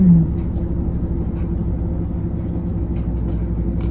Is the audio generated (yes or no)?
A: no